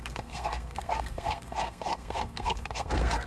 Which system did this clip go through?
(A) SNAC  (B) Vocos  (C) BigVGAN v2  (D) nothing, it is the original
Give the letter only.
A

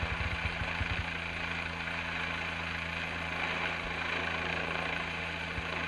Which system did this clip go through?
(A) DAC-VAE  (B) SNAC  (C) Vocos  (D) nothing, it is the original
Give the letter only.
D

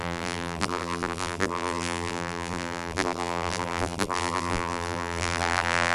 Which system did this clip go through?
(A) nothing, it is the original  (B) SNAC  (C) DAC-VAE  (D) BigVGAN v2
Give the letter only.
D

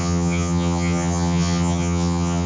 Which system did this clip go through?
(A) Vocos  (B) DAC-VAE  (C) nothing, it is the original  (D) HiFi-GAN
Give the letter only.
D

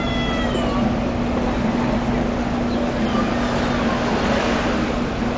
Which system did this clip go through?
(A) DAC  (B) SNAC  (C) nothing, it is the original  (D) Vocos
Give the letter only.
C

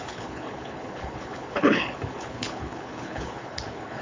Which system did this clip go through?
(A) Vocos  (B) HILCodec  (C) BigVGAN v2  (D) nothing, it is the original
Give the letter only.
B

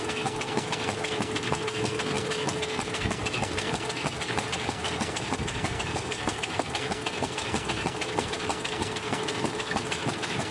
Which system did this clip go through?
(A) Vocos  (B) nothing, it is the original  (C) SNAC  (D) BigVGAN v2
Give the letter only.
C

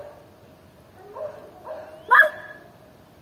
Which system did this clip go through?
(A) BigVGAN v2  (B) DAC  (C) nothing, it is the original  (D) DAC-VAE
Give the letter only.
C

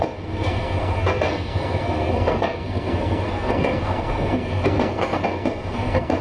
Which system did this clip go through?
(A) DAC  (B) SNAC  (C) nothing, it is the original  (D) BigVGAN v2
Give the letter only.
B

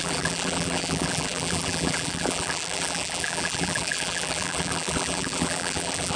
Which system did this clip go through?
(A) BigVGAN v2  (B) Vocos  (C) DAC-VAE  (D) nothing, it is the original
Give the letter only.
A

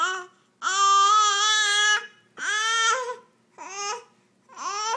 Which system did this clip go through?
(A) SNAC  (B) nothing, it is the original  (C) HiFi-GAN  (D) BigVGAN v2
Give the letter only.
B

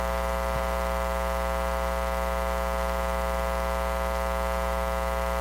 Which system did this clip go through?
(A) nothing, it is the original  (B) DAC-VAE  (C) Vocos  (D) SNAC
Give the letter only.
A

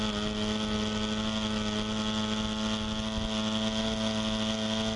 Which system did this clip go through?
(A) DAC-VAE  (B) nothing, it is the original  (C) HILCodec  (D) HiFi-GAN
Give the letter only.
B